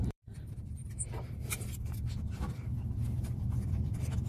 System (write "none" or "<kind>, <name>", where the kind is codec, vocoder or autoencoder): vocoder, BigVGAN v2